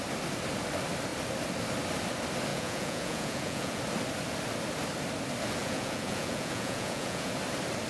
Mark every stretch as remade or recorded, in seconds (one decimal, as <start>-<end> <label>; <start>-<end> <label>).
0.0-2.5 recorded; 2.5-3.8 remade; 3.8-5.6 recorded; 5.6-7.3 remade; 7.3-7.9 recorded